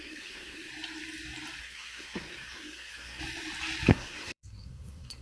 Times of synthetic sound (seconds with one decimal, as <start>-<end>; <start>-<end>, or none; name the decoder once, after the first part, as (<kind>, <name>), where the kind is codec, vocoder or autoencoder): 0.0-0.7 (codec, SNAC); 1.6-3.2; 3.9-5.2